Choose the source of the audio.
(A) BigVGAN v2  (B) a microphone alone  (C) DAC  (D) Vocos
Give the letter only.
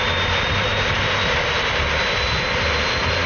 B